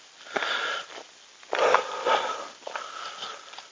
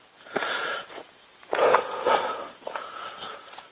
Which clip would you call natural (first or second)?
first